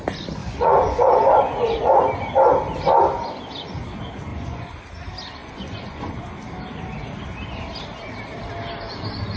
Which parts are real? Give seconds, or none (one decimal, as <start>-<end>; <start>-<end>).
0.0-0.4; 1.9-4.3; 4.8-5.4; 6.2-9.4